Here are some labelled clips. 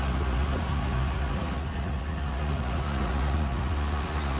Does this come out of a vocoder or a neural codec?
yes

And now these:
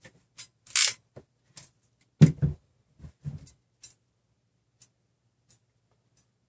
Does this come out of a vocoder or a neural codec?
no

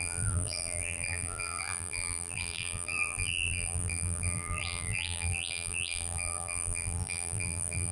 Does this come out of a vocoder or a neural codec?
yes